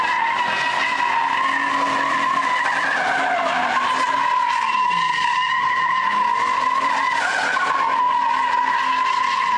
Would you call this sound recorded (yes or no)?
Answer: yes